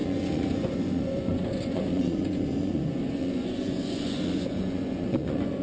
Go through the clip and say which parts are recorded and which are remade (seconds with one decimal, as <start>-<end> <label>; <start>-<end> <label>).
0.0-5.6 remade

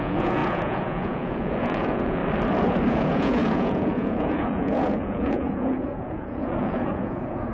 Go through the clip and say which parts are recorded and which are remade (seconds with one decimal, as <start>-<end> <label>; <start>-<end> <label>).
0.0-2.2 remade; 2.2-2.9 recorded; 2.9-7.5 remade